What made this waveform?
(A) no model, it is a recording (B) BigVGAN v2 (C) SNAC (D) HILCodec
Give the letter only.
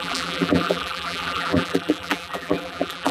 B